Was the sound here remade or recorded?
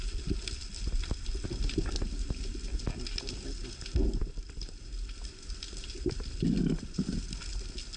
recorded